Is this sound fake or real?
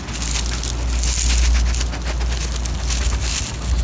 real